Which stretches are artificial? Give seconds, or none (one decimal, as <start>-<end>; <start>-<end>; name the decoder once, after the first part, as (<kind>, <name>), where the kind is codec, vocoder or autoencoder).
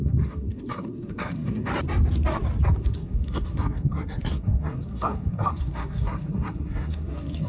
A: 0.0-1.7 (codec, SNAC); 2.8-7.5